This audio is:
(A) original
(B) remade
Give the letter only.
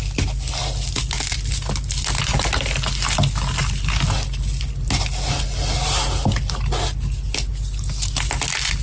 A